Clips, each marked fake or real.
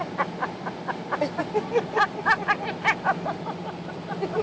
real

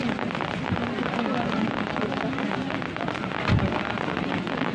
real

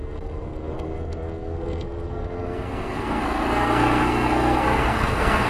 fake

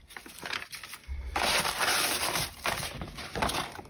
real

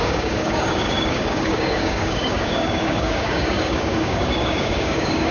fake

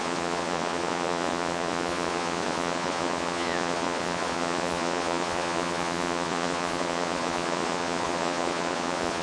fake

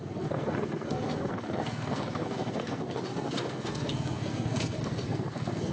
fake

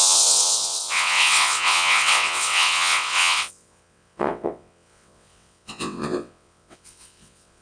fake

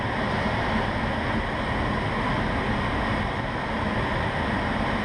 real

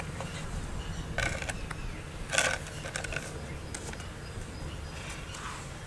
real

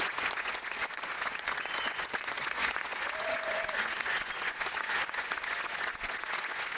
fake